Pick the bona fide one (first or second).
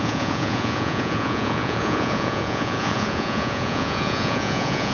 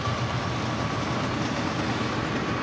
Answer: second